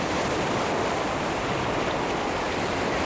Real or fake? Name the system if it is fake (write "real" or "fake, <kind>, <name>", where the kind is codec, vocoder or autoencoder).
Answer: real